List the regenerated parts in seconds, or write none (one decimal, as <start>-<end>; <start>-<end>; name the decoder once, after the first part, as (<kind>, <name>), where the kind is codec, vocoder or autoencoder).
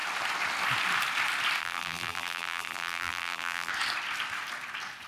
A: 1.6-3.7 (vocoder, BigVGAN v2)